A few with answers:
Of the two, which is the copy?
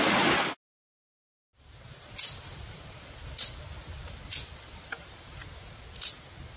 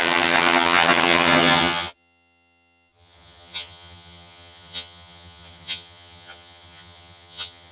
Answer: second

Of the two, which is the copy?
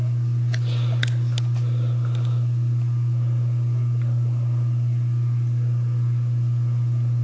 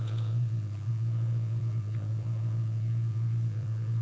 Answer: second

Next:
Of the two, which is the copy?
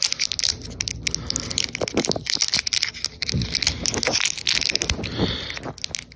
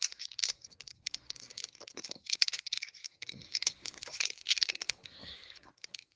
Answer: second